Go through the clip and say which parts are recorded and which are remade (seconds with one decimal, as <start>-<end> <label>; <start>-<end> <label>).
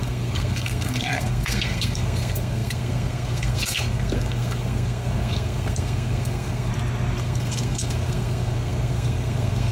0.0-6.7 remade; 6.7-7.2 recorded; 7.2-9.7 remade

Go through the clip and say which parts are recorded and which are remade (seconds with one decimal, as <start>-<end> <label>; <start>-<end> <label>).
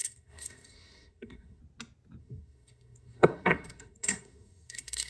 0.0-1.6 remade; 1.6-2.2 recorded; 2.2-5.1 remade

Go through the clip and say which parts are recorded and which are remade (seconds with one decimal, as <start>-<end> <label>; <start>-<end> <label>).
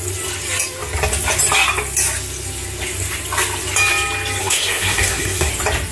0.0-4.4 recorded; 4.4-5.5 remade; 5.5-5.9 recorded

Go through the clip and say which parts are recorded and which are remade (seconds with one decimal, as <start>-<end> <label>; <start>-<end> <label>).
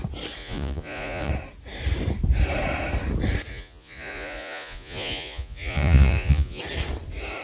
0.0-0.4 recorded; 0.4-1.3 remade; 1.3-3.5 recorded; 3.5-6.6 remade; 6.6-7.4 recorded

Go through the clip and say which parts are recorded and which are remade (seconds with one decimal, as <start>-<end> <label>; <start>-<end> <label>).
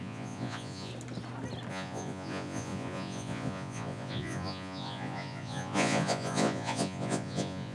0.0-0.9 remade; 0.9-1.7 recorded; 1.7-7.7 remade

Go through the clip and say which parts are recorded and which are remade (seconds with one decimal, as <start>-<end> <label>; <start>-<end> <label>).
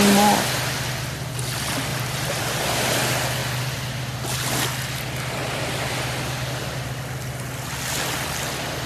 0.0-1.9 recorded; 1.9-2.8 remade; 2.8-8.9 recorded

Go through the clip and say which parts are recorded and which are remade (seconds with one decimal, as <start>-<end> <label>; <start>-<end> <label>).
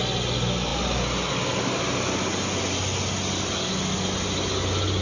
0.0-5.0 recorded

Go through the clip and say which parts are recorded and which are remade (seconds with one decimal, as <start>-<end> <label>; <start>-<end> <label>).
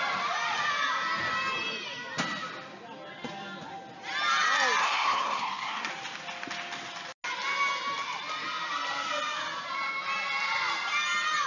0.0-4.8 recorded; 4.8-5.9 remade; 5.9-11.5 recorded